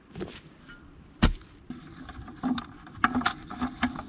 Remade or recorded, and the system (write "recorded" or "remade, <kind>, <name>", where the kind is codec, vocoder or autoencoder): recorded